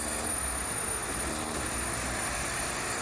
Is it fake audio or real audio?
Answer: real